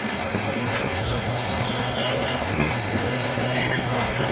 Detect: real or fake fake